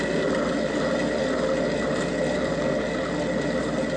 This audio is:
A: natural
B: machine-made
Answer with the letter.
A